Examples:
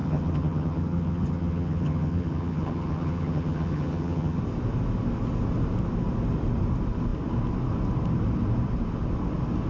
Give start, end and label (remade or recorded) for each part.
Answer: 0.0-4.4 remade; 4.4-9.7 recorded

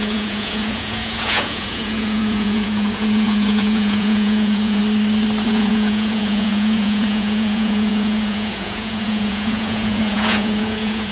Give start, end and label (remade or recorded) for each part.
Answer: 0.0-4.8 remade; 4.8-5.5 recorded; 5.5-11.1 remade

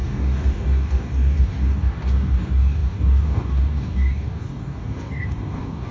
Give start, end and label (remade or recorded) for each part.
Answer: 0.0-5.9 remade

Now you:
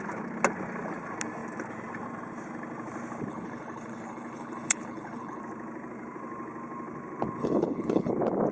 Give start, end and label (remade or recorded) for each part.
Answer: 0.0-3.3 recorded; 3.3-5.4 remade; 5.4-7.4 recorded; 7.4-8.1 remade; 8.1-8.5 recorded